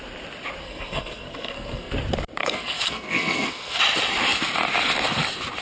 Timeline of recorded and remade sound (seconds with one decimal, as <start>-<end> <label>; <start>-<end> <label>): 0.0-0.6 recorded; 0.6-1.9 remade; 1.9-2.4 recorded; 2.4-3.8 remade; 3.8-5.6 recorded